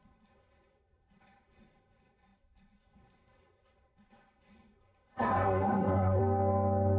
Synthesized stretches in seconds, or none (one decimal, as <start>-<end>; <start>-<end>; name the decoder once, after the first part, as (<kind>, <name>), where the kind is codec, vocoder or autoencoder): 0.0-6.2 (codec, SNAC)